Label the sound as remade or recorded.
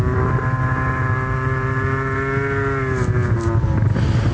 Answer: recorded